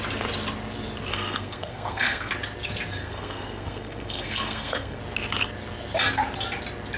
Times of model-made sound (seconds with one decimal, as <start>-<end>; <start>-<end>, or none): 1.1-2.3; 3.0-5.0